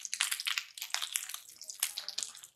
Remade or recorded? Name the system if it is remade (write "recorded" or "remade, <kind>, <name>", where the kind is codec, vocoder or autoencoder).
recorded